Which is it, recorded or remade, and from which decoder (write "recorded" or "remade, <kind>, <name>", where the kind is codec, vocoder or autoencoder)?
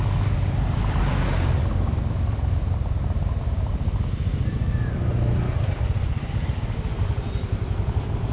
recorded